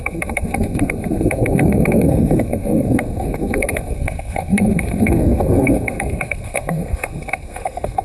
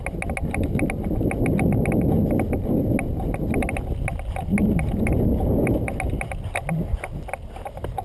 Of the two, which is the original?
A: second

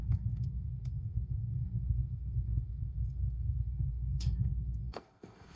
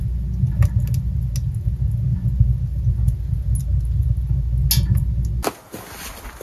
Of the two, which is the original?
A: second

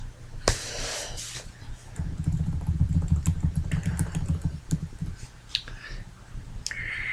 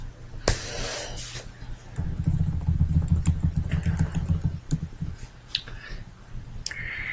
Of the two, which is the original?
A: second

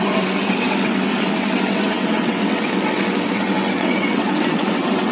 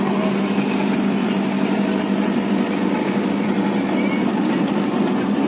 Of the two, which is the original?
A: second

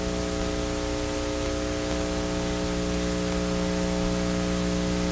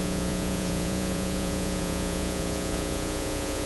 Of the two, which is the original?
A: first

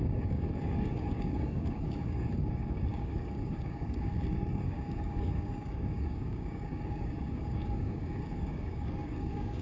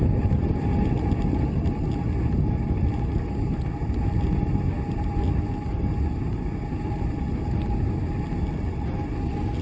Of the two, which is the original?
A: second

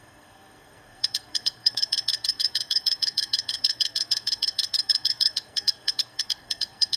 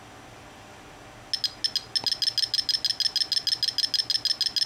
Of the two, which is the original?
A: second